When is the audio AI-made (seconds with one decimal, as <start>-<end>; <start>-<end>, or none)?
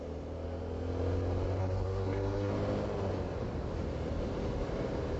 1.6-2.5